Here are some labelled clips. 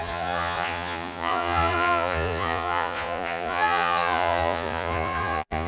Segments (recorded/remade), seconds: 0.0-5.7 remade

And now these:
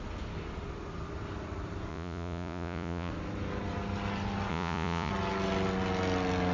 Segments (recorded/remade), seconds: 0.0-1.9 recorded; 1.9-3.1 remade; 3.1-4.5 recorded; 4.5-5.1 remade; 5.1-6.5 recorded

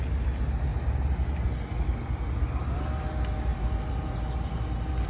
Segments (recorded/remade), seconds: 0.0-5.1 recorded

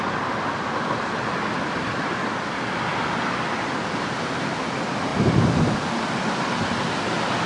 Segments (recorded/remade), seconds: 0.0-7.5 recorded

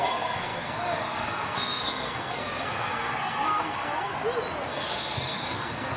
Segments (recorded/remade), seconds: 0.0-4.1 remade; 4.1-4.7 recorded; 4.7-6.0 remade

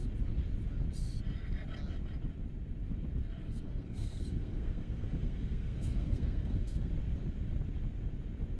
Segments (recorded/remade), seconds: 0.0-3.4 recorded; 3.4-6.9 remade; 6.9-8.6 recorded

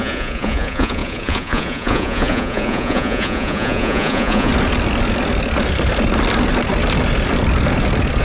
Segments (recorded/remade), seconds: 0.0-4.5 remade; 4.5-8.2 recorded